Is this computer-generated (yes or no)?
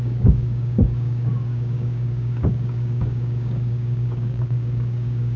yes